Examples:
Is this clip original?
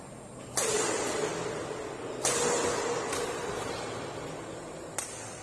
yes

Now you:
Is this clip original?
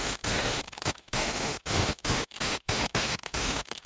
no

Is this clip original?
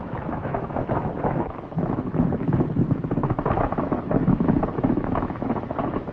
no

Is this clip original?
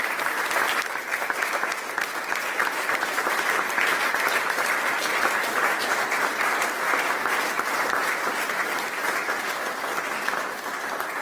yes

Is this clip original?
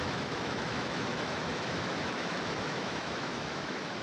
no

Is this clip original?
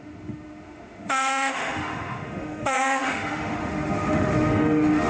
no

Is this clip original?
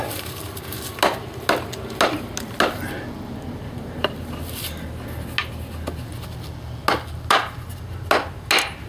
yes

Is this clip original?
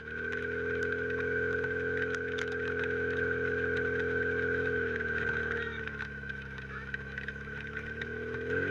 no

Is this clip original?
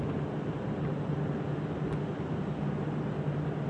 yes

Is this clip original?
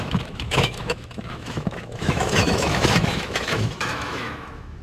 no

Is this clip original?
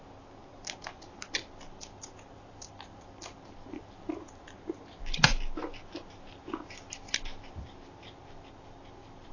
yes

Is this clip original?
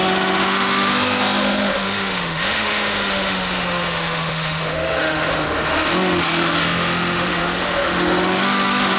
no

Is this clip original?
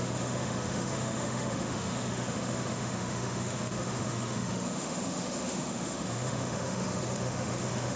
no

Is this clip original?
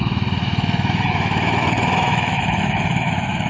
no